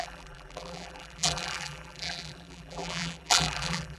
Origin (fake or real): fake